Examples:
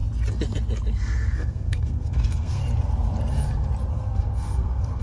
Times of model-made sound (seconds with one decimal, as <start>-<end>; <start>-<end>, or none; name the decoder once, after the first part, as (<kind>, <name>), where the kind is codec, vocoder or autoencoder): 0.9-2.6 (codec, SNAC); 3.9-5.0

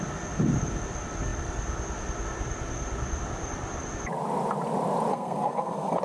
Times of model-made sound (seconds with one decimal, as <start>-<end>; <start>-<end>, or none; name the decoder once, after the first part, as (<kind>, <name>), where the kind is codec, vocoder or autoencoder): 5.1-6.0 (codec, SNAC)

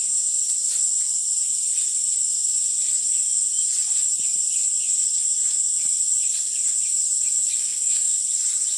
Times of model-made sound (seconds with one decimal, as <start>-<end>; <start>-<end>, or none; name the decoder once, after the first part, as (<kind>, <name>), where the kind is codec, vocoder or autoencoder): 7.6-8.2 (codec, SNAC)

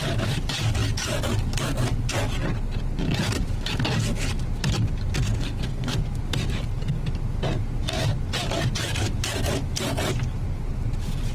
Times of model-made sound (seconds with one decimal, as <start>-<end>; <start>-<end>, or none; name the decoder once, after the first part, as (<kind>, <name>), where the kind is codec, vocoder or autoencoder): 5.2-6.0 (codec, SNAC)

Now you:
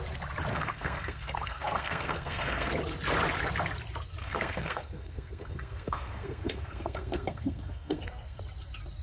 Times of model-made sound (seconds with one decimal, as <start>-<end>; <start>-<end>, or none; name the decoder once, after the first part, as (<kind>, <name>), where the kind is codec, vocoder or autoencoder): 0.5-2.7 (codec, SNAC); 4.2-8.4